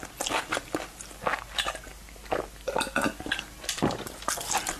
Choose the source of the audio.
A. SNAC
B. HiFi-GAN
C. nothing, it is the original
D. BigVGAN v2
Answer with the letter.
C